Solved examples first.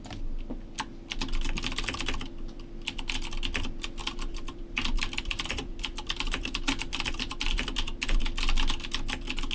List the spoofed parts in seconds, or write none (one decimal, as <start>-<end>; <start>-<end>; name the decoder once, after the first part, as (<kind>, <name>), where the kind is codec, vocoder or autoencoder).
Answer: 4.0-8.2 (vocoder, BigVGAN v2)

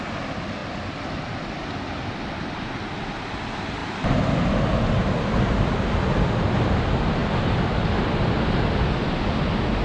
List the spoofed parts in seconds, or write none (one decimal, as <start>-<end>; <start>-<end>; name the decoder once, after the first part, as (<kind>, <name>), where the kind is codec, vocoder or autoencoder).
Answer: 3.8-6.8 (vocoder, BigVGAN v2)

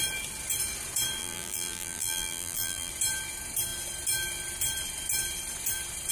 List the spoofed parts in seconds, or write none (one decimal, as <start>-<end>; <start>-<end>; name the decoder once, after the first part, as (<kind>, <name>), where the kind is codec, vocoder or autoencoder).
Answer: 1.2-2.9 (vocoder, BigVGAN v2)

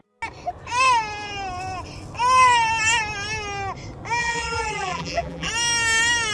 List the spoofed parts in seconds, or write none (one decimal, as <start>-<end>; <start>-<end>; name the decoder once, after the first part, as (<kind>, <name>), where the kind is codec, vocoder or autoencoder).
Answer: 4.2-5.5 (vocoder, BigVGAN v2)

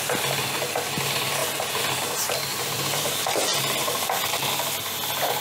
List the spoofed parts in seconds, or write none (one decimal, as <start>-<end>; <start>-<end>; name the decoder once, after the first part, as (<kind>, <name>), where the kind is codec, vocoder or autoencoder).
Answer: 2.5-3.1 (vocoder, BigVGAN v2)

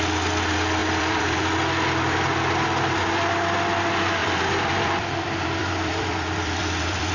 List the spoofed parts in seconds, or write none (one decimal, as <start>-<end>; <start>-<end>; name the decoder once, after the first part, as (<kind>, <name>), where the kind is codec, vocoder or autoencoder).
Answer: 0.8-1.4 (vocoder, BigVGAN v2); 4.2-7.1